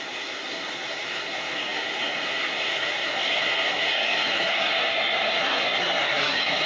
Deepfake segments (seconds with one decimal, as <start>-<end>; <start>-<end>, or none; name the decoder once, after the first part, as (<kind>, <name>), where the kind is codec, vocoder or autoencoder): 0.0-6.7 (codec, SNAC)